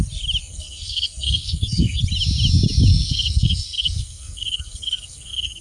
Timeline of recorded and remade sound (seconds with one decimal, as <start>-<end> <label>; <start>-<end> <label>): 0.0-0.4 recorded; 0.4-2.0 remade; 2.0-2.9 recorded; 2.9-5.6 remade